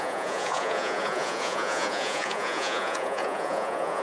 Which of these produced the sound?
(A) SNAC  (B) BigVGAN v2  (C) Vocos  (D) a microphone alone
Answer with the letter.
C